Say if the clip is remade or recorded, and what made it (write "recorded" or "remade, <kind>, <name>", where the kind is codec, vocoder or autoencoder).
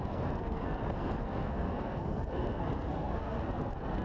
remade, codec, SNAC